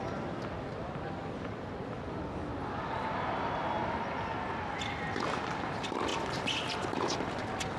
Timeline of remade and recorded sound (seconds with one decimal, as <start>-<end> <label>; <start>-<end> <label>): 0.0-7.8 recorded